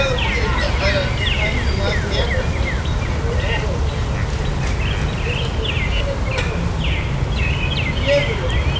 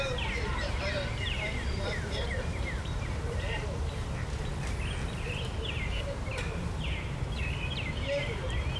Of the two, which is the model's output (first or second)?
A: second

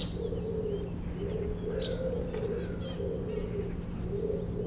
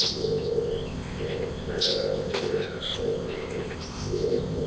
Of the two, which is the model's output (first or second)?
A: second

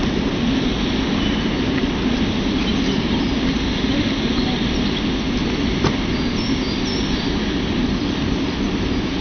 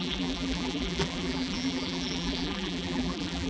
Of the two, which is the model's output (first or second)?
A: second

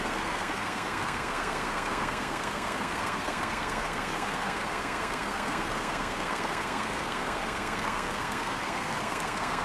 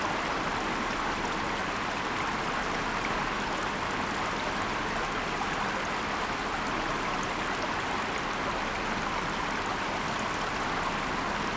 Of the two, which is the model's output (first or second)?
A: first